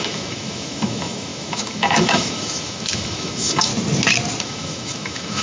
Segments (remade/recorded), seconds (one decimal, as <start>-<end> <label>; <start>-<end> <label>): 0.0-3.7 remade; 3.7-4.4 recorded; 4.4-5.4 remade

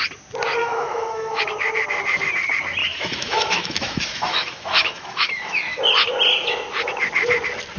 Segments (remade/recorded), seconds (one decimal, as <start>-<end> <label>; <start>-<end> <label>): 0.0-0.6 recorded; 0.6-1.4 remade; 1.4-2.8 recorded; 2.8-5.8 remade; 5.8-7.8 recorded